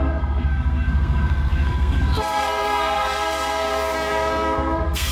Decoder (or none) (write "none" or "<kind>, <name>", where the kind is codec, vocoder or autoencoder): codec, SNAC